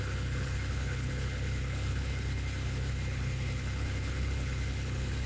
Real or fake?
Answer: fake